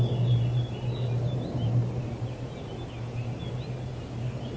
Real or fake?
real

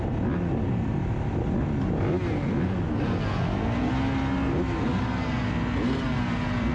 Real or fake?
real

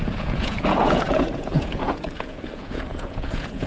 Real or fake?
fake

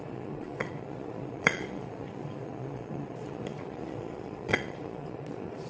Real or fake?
fake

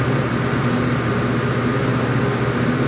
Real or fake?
real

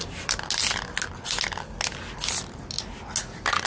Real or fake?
real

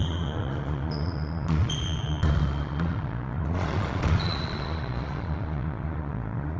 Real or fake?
fake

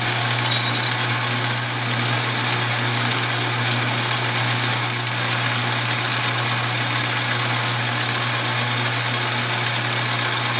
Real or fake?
real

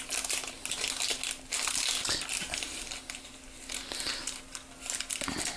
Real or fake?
real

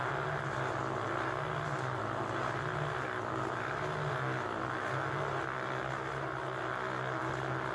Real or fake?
real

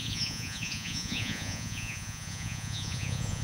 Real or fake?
fake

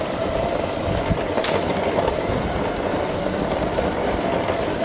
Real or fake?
real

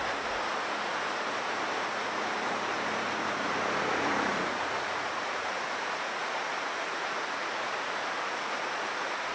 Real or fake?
fake